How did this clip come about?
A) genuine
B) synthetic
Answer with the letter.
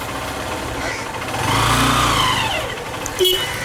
A